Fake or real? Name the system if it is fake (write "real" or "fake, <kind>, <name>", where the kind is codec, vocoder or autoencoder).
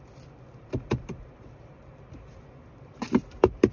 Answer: real